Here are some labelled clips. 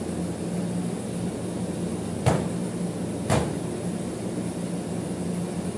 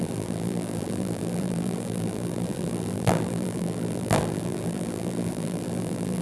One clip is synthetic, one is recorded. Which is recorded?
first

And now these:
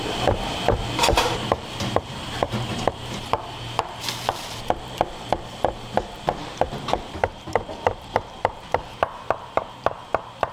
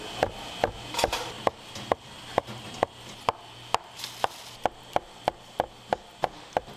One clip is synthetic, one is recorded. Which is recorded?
second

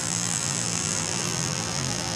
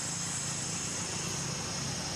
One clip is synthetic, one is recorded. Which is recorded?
second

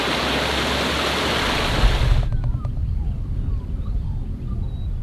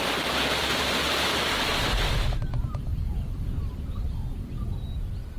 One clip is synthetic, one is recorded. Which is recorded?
first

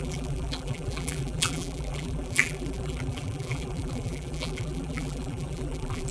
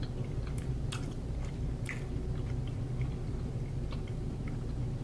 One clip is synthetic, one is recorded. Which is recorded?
second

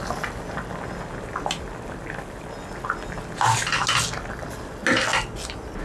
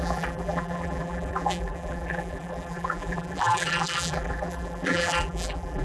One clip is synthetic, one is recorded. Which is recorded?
first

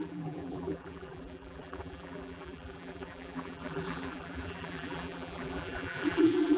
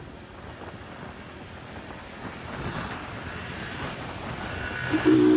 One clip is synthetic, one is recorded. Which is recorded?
second